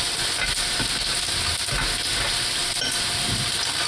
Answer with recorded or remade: recorded